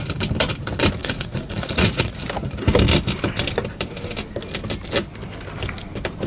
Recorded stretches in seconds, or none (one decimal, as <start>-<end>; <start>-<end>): 0.0-1.0; 2.2-6.3